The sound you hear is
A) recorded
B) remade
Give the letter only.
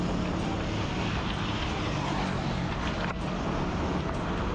A